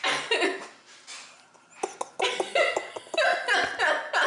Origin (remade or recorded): recorded